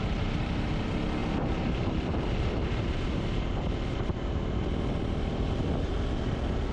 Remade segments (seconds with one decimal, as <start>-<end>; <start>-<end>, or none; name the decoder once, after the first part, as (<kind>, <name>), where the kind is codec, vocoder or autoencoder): 0.0-5.7 (vocoder, BigVGAN v2)